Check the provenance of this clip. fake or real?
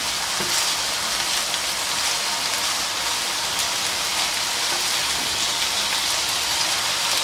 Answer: real